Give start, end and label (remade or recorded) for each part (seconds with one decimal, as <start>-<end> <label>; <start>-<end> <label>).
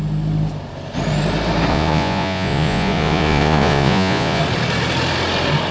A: 0.0-1.7 recorded; 1.7-4.4 remade; 4.4-5.7 recorded